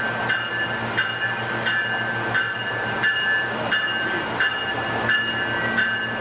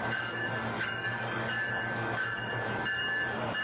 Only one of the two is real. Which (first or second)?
first